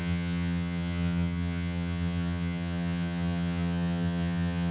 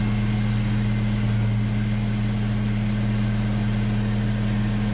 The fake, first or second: first